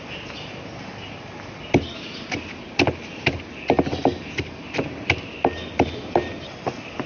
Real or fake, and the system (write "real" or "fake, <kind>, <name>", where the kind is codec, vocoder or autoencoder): real